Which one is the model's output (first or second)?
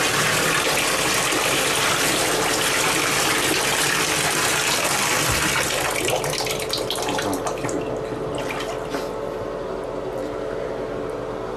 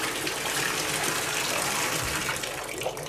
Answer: second